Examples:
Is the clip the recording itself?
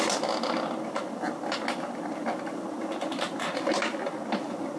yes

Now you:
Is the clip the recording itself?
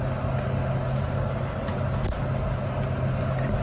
yes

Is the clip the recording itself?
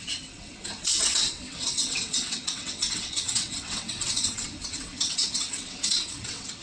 no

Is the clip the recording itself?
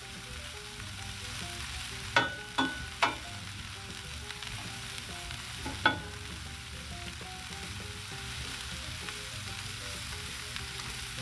yes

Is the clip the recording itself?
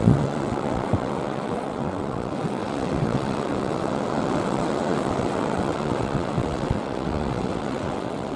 no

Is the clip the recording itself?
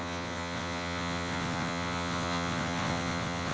no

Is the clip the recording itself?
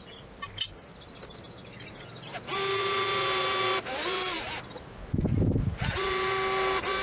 yes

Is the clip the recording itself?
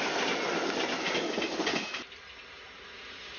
yes